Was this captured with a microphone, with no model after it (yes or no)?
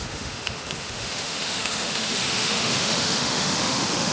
no